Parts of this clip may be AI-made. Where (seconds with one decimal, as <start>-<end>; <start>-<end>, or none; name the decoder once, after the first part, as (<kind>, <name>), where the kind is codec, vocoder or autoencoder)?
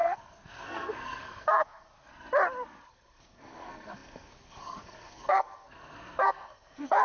0.0-1.9 (codec, SNAC); 2.9-7.0